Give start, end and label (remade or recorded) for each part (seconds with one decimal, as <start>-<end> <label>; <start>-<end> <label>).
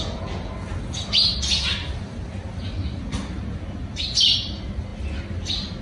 0.0-5.8 recorded